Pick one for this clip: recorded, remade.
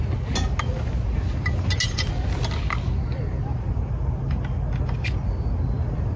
recorded